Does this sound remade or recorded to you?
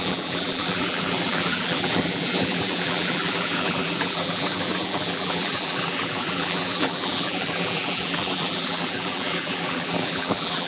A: remade